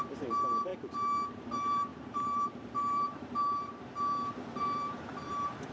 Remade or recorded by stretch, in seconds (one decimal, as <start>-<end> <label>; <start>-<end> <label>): 0.0-0.7 remade; 0.7-1.3 recorded; 1.3-5.7 remade